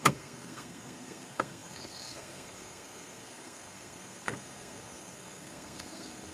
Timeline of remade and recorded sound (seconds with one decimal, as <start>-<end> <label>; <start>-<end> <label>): 0.0-6.3 remade

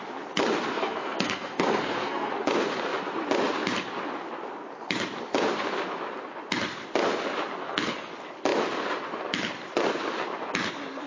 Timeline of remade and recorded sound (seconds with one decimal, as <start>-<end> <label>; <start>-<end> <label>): 0.0-0.7 recorded; 0.7-2.3 remade; 2.3-7.6 recorded; 7.6-8.1 remade; 8.1-11.1 recorded

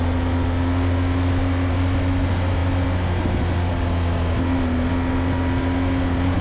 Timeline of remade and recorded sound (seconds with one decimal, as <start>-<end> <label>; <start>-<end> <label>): 0.0-6.4 recorded

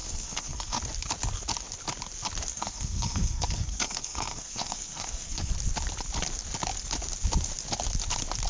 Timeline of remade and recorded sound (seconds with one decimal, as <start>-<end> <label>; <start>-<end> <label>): 0.0-0.8 remade; 0.8-2.5 recorded; 2.5-5.5 remade; 5.5-8.5 recorded

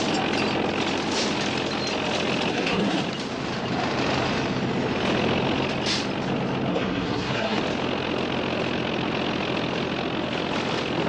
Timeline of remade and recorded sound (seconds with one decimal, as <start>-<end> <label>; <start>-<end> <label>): 0.0-2.5 recorded; 2.5-3.0 remade; 3.0-6.7 recorded; 6.7-7.6 remade; 7.6-11.1 recorded